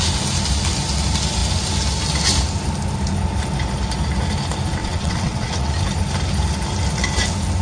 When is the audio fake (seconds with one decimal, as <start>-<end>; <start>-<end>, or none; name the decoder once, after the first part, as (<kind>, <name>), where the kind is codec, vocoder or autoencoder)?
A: 4.8-5.7 (vocoder, WaveNeXt)

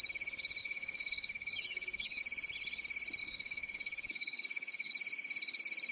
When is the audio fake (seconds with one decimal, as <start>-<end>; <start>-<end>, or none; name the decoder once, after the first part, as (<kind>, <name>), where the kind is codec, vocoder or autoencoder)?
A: 0.6-2.2 (codec, DAC); 3.2-4.9

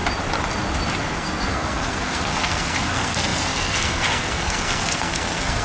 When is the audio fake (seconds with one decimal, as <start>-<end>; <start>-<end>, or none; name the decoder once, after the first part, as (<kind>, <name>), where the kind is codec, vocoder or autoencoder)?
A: 1.0-5.6 (codec, SNAC)

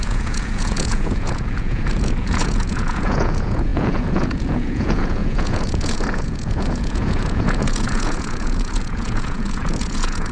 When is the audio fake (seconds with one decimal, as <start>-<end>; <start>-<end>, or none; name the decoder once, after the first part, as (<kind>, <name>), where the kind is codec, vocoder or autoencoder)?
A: 0.0-10.3 (vocoder, Vocos)